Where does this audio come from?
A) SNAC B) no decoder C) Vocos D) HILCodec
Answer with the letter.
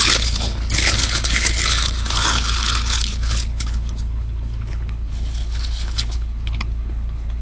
D